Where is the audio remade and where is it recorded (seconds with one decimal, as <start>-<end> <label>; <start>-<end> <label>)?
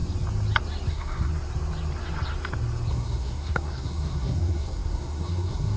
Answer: 0.0-0.9 recorded; 0.9-1.3 remade; 1.3-2.9 recorded; 2.9-5.8 remade